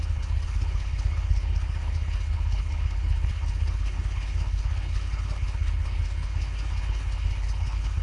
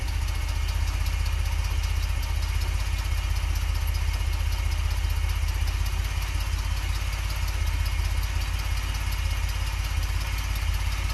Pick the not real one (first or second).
first